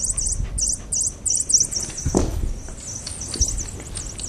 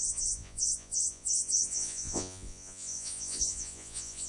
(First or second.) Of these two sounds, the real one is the first